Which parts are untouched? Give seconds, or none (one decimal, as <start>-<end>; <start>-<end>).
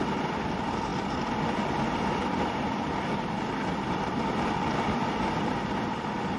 0.0-6.4